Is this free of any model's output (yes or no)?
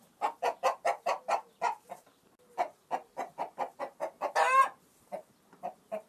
yes